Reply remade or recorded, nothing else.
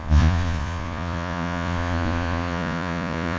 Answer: remade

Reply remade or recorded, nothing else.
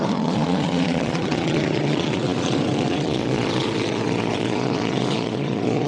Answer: remade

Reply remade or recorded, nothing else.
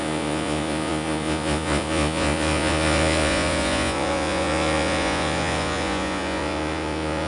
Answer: remade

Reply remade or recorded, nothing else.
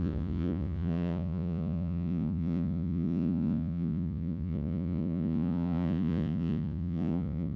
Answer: remade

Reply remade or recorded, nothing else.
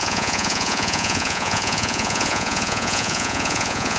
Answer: remade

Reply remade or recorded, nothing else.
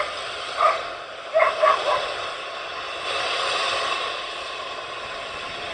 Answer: recorded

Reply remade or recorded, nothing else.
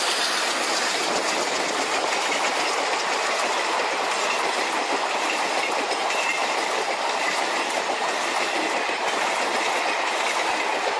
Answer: recorded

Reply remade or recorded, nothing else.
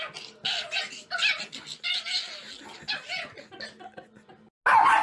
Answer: recorded